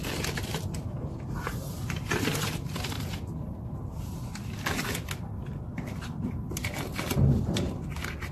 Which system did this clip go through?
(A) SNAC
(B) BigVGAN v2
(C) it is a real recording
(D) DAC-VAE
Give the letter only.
C